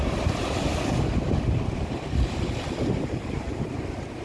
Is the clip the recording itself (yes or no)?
yes